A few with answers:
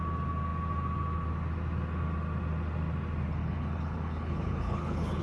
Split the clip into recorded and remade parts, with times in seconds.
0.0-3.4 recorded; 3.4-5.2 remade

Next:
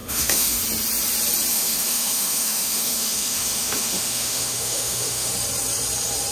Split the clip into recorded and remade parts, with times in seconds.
0.0-0.6 remade; 0.6-1.5 recorded; 1.5-5.3 remade; 5.3-6.3 recorded